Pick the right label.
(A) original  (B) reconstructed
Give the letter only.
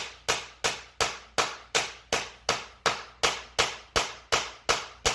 A